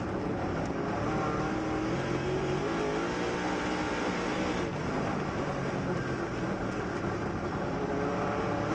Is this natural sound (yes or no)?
yes